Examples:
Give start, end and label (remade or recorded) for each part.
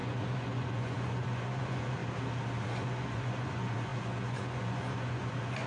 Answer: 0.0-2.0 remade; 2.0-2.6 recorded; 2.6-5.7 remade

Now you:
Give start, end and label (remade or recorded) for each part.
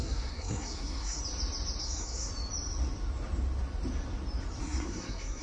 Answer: 0.0-1.2 remade; 1.2-1.8 recorded; 1.8-2.3 remade; 2.3-4.6 recorded; 4.6-5.4 remade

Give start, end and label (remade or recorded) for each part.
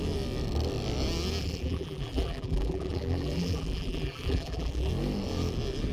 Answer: 0.0-1.4 recorded; 1.4-4.9 remade; 4.9-5.9 recorded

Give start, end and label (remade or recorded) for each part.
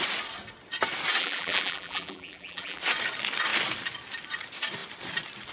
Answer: 0.0-1.2 recorded; 1.2-2.8 remade; 2.8-5.5 recorded